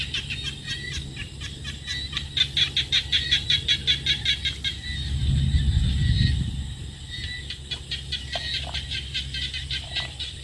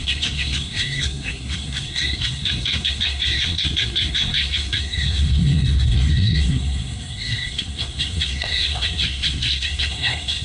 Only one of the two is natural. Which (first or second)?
first